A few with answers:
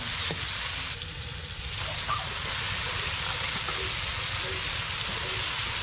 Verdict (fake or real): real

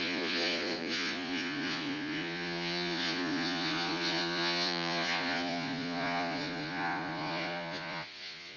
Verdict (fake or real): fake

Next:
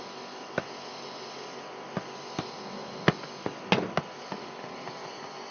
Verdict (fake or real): real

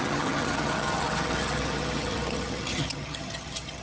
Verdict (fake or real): fake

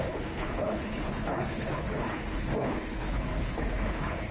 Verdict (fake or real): fake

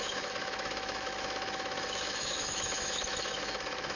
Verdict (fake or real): fake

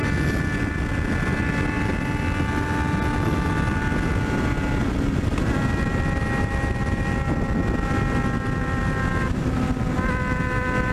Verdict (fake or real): real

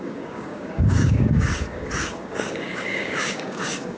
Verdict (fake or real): fake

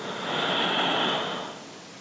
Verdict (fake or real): real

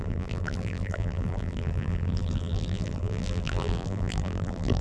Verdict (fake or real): fake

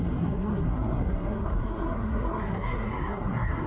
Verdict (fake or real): fake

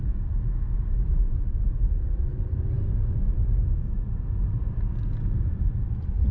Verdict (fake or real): fake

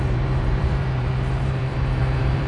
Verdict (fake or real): fake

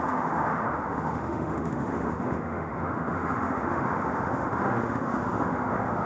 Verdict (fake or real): fake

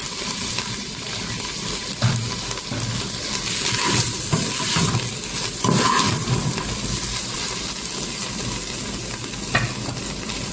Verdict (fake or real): real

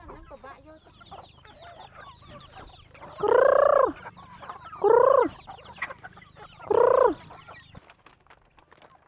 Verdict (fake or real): real